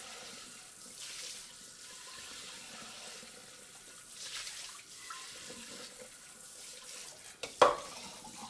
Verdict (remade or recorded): recorded